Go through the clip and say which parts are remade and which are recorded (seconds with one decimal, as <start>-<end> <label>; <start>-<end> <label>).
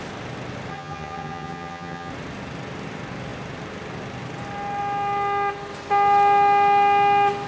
0.0-0.7 recorded; 0.7-2.1 remade; 2.1-7.5 recorded